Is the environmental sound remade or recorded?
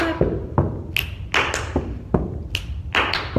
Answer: recorded